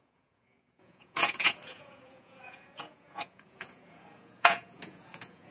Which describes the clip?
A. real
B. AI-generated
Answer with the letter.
B